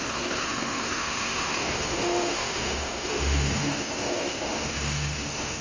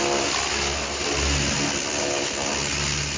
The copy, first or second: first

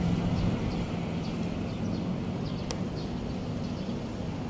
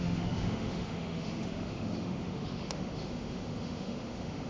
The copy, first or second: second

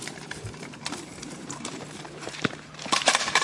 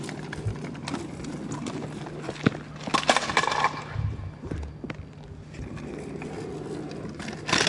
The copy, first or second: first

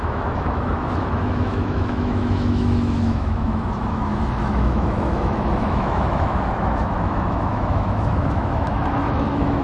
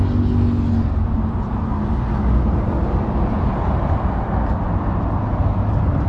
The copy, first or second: first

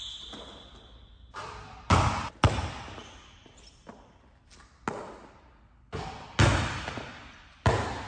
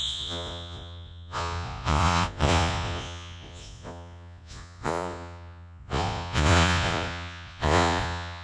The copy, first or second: second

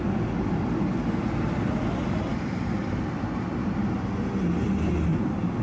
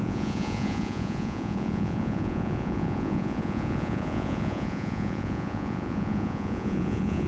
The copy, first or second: second